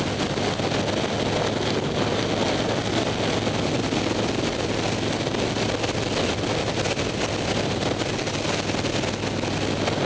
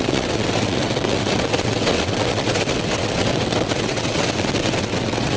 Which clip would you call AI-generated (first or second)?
second